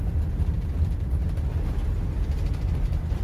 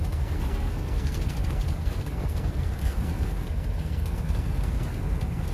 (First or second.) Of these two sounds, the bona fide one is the first